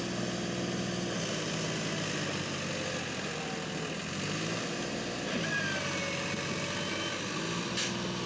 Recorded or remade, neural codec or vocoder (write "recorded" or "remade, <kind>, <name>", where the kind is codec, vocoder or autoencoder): recorded